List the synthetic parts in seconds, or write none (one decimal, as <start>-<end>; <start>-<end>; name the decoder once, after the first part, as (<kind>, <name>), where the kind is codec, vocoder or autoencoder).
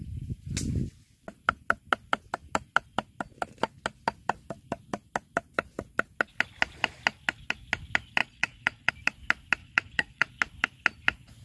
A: 8.2-8.9 (vocoder, Vocos); 9.6-10.3